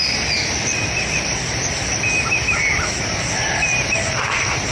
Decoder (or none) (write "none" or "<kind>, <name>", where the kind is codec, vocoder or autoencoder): none